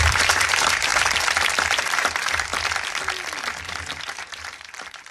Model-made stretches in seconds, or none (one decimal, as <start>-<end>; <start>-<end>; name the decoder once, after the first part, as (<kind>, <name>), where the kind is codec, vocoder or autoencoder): 0.0-0.9 (vocoder, BigVGAN v2); 1.6-2.5; 3.6-5.1